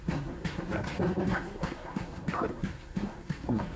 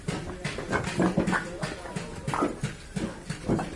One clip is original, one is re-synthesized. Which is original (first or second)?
second